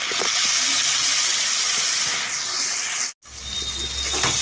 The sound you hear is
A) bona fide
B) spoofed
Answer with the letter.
A